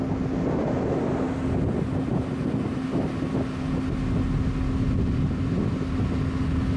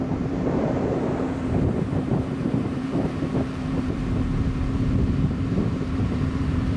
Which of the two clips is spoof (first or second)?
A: second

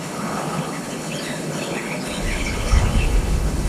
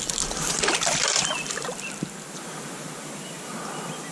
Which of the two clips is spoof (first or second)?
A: first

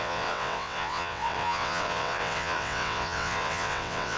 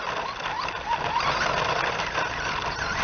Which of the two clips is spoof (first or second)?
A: first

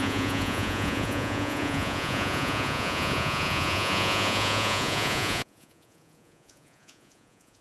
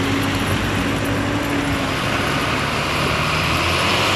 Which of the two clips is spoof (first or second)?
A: first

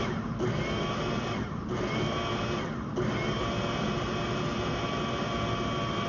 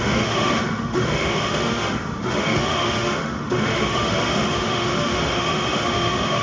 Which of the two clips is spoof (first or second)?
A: second